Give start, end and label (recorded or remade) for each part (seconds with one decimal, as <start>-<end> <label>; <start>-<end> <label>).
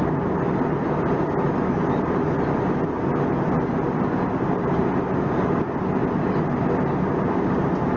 0.0-8.0 recorded